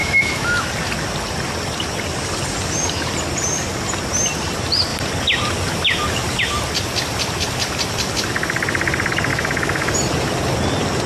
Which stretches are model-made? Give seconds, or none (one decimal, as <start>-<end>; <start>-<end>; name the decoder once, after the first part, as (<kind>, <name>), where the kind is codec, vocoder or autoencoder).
0.0-0.7 (autoencoder, DAC-VAE); 9.3-9.9